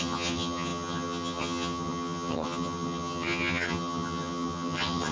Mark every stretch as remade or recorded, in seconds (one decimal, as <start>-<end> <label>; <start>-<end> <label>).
0.0-5.1 remade